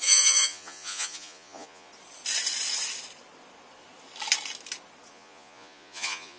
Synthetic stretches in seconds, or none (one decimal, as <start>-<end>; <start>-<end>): 0.0-1.9; 5.1-6.4